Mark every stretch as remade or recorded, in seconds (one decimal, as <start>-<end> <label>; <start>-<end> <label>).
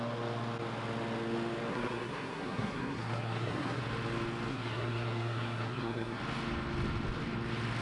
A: 0.0-1.7 recorded; 1.7-3.8 remade; 3.8-4.5 recorded; 4.5-6.2 remade; 6.2-7.8 recorded